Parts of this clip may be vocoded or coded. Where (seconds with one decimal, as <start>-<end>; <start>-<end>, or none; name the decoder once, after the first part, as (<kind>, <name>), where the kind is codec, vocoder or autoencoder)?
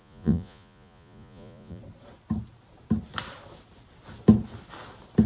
0.0-1.8 (vocoder, Vocos)